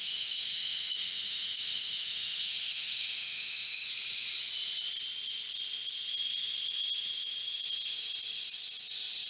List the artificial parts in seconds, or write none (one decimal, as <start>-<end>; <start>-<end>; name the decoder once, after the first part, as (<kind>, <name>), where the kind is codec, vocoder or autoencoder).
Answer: 0.0-3.9 (autoencoder, DAC-VAE)